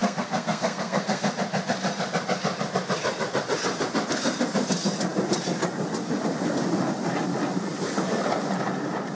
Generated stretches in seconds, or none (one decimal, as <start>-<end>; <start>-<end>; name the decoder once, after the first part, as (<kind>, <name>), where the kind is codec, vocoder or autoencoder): 0.0-1.3 (codec, SNAC)